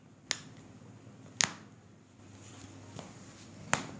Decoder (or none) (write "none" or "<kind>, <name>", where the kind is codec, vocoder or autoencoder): none